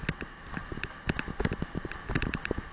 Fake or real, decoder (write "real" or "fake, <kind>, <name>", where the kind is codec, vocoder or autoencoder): real